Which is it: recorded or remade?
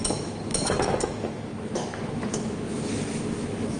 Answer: remade